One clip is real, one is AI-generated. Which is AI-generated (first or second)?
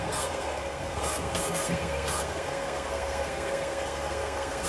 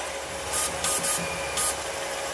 first